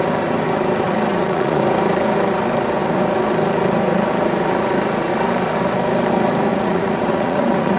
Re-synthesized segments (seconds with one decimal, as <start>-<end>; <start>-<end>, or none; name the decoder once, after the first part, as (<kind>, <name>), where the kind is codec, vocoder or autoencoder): 1.1-1.6 (vocoder, Vocos); 6.5-7.8